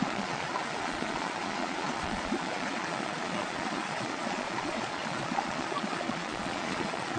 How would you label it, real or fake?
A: fake